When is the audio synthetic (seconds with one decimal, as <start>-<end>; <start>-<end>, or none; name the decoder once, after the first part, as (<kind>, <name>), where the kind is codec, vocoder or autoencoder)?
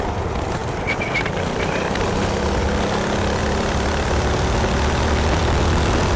0.6-2.6 (vocoder, BigVGAN v2); 3.4-4.3